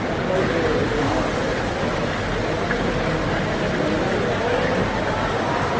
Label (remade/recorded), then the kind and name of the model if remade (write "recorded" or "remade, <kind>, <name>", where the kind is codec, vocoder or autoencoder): recorded